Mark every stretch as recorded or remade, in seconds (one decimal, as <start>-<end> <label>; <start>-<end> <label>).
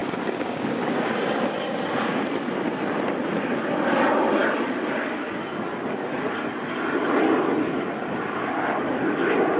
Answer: 0.0-1.1 remade; 1.1-9.6 recorded